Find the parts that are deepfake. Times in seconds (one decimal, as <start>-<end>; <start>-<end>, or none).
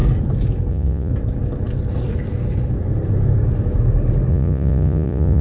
0.7-1.1; 4.3-5.4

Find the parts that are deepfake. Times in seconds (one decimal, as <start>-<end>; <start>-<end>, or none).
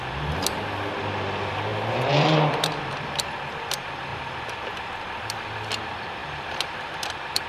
1.7-3.4; 4.1-4.7; 6.2-7.5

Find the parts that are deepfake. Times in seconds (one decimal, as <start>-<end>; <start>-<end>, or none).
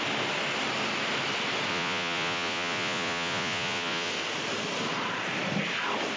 1.7-4.1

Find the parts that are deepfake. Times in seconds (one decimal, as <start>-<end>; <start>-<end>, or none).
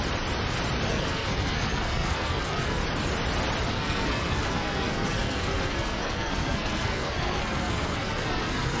0.9-2.8; 3.7-8.8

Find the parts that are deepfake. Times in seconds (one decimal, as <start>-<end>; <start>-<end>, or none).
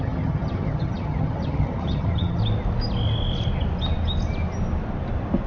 0.0-2.4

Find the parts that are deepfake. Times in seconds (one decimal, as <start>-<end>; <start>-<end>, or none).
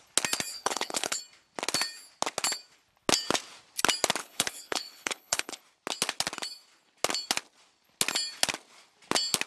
0.5-1.2; 4.2-5.6